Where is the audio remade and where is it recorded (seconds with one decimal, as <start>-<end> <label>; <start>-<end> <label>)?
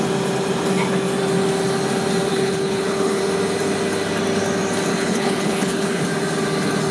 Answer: 0.0-2.3 recorded; 2.3-3.2 remade; 3.2-4.9 recorded; 4.9-6.0 remade; 6.0-6.9 recorded